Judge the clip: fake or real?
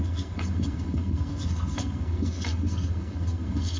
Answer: fake